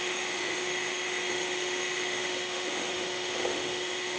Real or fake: fake